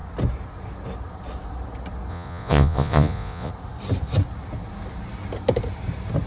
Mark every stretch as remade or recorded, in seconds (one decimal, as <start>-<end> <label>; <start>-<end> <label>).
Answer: 0.0-2.1 recorded; 2.1-3.5 remade; 3.5-6.3 recorded